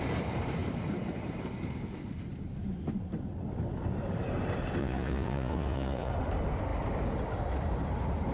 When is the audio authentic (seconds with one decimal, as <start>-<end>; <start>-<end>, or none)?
0.0-4.8; 6.1-8.3